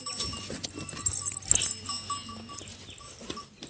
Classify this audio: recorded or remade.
recorded